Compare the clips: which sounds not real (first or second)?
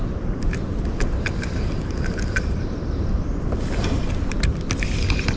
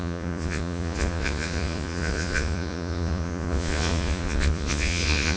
second